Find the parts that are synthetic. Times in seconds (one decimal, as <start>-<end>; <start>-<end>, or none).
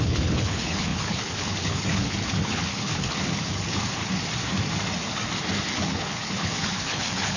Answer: 0.0-4.0; 5.8-7.4